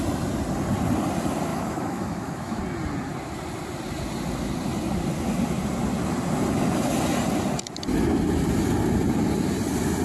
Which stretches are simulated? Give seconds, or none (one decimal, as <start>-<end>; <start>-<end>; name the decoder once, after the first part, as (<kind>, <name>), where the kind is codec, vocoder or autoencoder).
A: 1.5-2.6 (autoencoder, DAC-VAE)